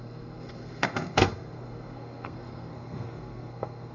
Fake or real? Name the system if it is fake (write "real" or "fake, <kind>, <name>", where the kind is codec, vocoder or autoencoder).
fake, codec, SNAC